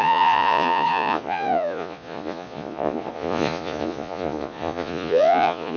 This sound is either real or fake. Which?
fake